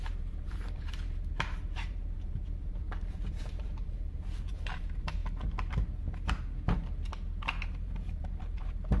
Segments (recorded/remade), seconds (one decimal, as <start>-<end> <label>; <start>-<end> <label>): 0.0-5.2 remade; 5.2-7.7 recorded; 7.7-9.0 remade